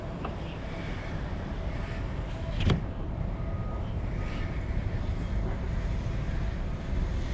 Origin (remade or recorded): recorded